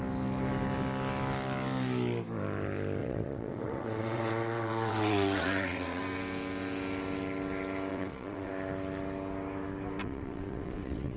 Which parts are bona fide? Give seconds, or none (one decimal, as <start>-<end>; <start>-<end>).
0.0-3.0; 6.0-7.9; 8.5-10.0